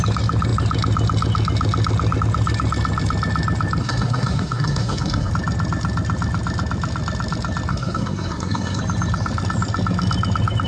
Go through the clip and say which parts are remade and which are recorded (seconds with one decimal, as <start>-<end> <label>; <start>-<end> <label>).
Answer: 0.0-3.8 recorded; 3.8-5.3 remade; 5.3-7.7 recorded; 7.7-8.8 remade; 8.8-10.7 recorded